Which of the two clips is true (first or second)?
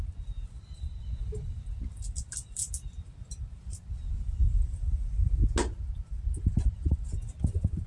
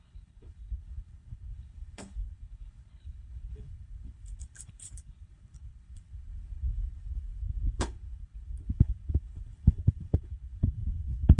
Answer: first